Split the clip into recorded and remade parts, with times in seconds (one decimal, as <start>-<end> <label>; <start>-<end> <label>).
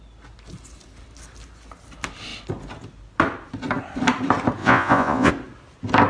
0.0-4.6 recorded; 4.6-5.3 remade; 5.3-6.1 recorded